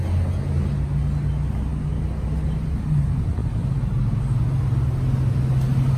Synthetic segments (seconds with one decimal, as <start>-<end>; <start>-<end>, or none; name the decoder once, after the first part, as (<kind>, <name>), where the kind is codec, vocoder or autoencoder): none